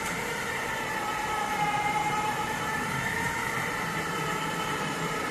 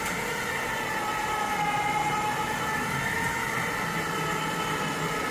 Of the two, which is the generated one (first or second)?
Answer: first